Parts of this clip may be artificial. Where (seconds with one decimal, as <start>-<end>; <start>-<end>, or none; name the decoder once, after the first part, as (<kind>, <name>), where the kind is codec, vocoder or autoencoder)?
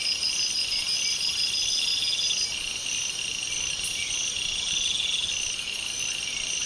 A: none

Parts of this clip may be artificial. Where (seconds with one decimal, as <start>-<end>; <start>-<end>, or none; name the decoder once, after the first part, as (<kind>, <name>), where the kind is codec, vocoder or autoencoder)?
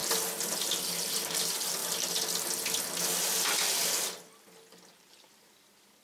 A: 1.3-1.8 (vocoder, BigVGAN v2); 5.1-6.0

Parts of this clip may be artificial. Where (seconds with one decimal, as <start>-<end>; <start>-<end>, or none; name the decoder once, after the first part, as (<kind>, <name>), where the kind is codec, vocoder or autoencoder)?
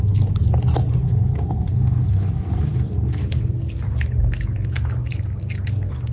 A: 1.0-3.2 (codec, SNAC)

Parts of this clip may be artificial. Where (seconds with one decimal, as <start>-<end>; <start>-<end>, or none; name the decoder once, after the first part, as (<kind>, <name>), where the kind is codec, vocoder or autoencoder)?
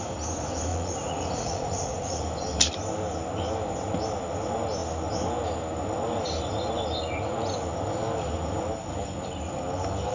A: 0.7-2.2 (vocoder, Vocos)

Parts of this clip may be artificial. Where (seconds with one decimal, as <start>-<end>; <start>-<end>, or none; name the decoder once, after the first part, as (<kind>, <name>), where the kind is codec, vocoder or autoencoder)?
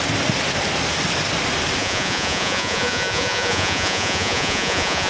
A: 1.8-5.1 (vocoder, Vocos)